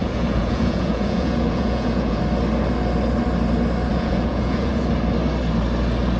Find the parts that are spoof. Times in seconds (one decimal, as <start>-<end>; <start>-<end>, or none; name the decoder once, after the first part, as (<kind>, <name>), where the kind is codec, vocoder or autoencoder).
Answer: 0.0-2.2 (vocoder, Vocos); 3.9-4.9